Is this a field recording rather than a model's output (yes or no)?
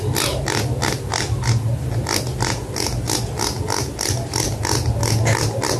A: yes